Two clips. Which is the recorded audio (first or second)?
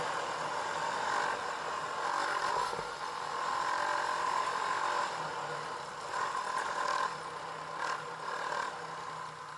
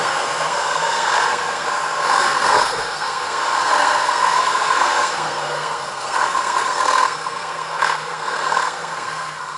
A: first